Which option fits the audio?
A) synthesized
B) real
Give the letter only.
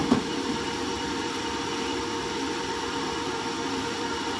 A